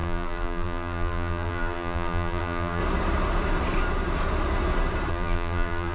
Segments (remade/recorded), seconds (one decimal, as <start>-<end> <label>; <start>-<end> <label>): 0.0-2.8 remade; 2.8-5.1 recorded; 5.1-5.9 remade

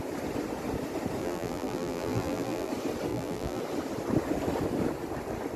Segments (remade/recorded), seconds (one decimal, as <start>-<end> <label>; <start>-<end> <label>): 0.0-1.2 recorded; 1.2-2.7 remade; 2.7-3.1 recorded; 3.1-3.6 remade; 3.6-5.6 recorded

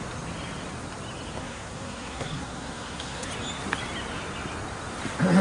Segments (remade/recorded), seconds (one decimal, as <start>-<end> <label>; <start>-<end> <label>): 0.0-1.4 recorded; 1.4-3.3 remade; 3.3-5.4 recorded

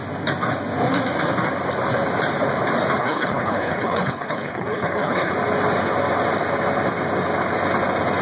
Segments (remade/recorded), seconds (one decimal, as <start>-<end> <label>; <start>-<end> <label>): 0.0-3.0 recorded; 3.0-5.3 remade; 5.3-8.2 recorded